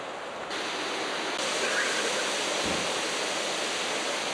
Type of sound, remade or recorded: recorded